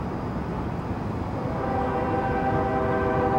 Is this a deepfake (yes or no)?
no